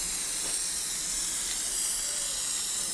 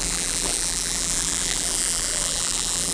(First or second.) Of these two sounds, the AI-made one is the second